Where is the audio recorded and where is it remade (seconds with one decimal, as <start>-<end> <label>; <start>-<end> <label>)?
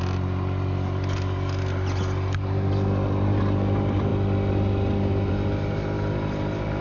0.0-6.8 recorded